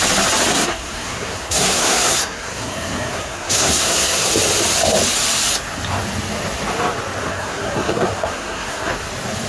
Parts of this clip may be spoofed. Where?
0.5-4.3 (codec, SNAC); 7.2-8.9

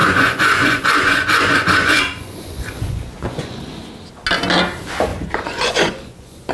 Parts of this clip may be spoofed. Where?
0.0-3.9 (vocoder, Vocos); 5.1-6.5

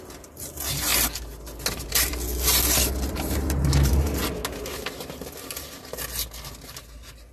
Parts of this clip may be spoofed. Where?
0.0-0.9 (vocoder, BigVGAN v2); 1.7-2.1; 3.1-4.2

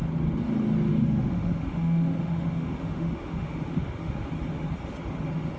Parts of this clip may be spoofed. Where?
0.9-4.3 (autoencoder, DAC-VAE)

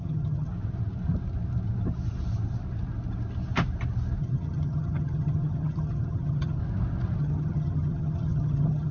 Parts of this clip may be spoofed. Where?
0.0-0.5 (vocoder, HiFi-GAN); 4.2-6.6; 7.2-8.9

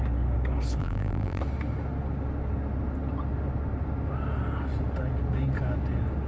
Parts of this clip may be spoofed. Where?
0.8-1.4 (vocoder, BigVGAN v2)